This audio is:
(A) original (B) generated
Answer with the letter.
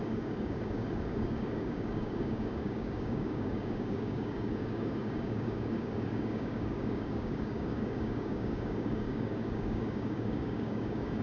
B